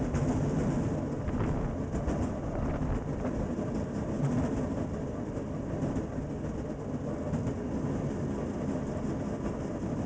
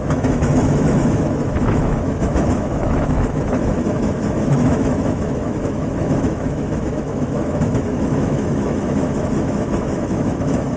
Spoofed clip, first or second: second